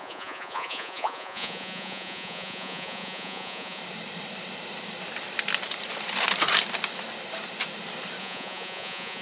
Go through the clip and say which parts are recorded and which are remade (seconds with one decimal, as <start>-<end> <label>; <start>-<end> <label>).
0.0-3.8 remade; 3.8-8.2 recorded; 8.2-9.2 remade